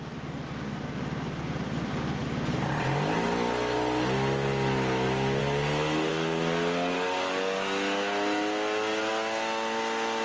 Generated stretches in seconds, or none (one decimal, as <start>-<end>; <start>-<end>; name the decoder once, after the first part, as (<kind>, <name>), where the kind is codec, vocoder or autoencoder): none